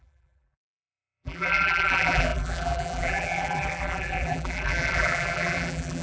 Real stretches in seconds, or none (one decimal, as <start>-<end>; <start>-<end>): none